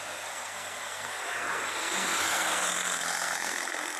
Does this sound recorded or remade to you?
remade